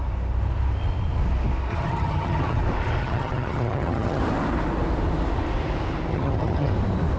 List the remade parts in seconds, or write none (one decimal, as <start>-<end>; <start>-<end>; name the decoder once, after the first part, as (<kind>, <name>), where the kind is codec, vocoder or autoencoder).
1.7-2.6 (vocoder, HiFi-GAN); 3.0-4.2; 6.1-6.7